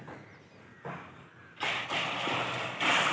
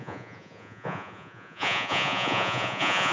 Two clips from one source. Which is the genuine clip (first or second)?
first